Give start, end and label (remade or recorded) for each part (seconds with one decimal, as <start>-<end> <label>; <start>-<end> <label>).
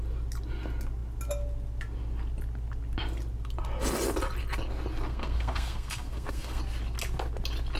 0.0-5.1 recorded; 5.1-6.6 remade; 6.6-7.8 recorded